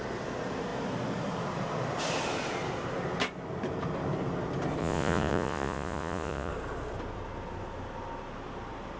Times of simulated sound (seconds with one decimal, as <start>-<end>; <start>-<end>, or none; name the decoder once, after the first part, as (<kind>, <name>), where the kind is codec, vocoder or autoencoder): 4.8-6.5 (vocoder, Vocos)